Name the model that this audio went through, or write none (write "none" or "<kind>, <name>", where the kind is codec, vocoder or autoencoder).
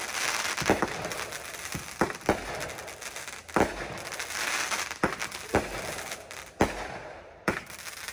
none